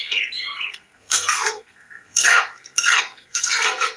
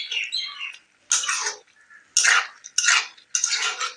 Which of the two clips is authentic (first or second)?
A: second